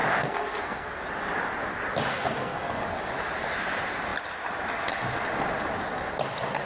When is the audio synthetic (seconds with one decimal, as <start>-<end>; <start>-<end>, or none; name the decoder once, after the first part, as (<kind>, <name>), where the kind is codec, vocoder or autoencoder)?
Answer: 0.0-1.0 (codec, SNAC); 2.1-2.8